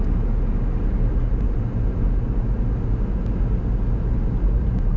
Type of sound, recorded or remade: recorded